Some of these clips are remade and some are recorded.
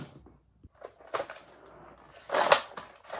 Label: recorded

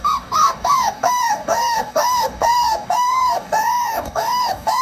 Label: remade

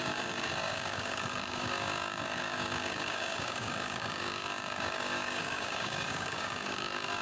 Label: remade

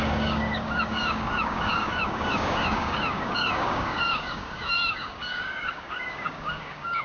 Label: remade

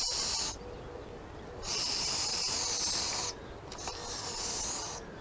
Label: recorded